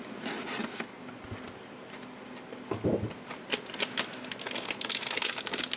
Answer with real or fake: real